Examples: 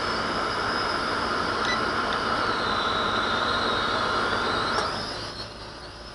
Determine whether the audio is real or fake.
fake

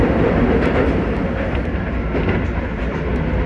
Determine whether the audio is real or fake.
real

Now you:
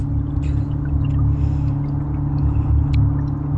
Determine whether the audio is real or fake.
real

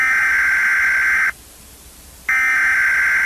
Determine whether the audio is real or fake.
real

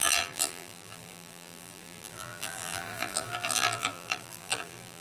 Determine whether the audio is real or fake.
fake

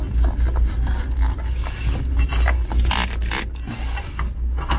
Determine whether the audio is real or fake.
real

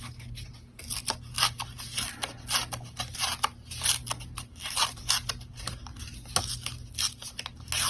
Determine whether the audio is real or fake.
real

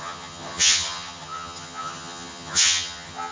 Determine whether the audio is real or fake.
fake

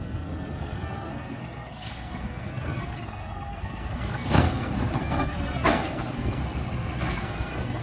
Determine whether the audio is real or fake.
fake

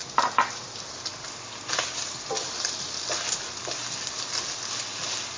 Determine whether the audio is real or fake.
real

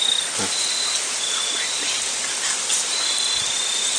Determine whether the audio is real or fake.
real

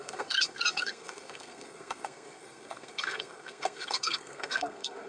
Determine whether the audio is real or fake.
fake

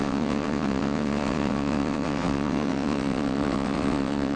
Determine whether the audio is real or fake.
fake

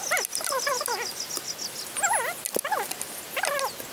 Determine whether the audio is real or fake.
real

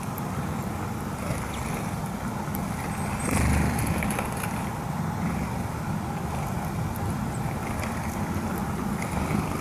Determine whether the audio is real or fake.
real